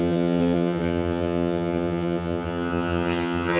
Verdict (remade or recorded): remade